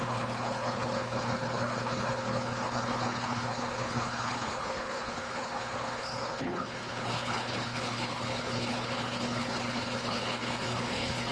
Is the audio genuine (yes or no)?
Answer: no